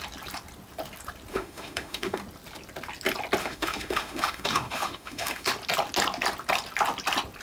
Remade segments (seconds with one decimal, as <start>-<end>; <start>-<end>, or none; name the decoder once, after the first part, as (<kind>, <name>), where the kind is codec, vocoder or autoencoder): 1.3-2.2 (autoencoder, DAC-VAE); 3.4-5.5